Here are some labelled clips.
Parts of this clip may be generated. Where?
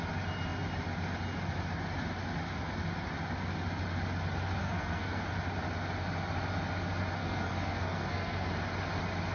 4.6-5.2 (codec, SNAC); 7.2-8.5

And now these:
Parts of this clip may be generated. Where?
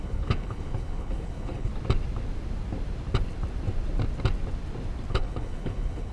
0.0-1.7 (codec, HILCodec); 5.1-6.1